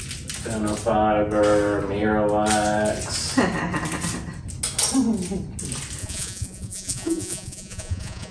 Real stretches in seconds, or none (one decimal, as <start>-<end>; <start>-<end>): 0.0-6.0